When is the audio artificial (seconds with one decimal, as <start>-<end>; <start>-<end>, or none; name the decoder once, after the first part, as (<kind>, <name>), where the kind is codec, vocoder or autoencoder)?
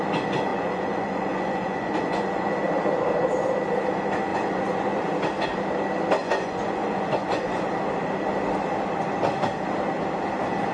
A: 0.5-2.5 (vocoder, Vocos); 4.3-5.0; 6.2-7.6